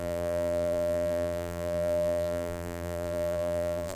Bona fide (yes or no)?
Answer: no